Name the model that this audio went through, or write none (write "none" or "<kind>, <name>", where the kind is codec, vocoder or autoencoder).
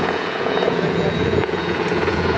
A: vocoder, Vocos